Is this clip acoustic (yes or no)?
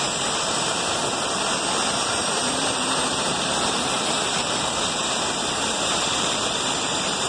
no